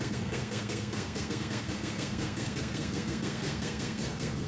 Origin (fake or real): fake